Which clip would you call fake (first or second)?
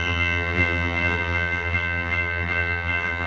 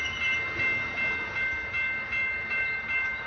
first